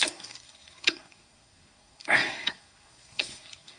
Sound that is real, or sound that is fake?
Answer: fake